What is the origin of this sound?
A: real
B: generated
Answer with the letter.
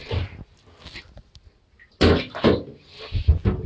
A